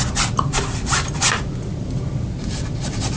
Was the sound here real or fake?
real